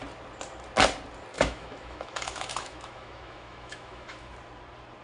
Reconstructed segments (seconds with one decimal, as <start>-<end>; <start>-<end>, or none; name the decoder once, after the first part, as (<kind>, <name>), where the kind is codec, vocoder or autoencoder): 1.3-4.3 (autoencoder, DAC-VAE)